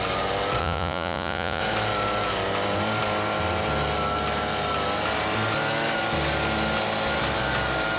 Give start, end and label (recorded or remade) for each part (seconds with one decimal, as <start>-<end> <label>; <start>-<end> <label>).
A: 0.0-0.6 recorded; 0.6-1.6 remade; 1.6-8.0 recorded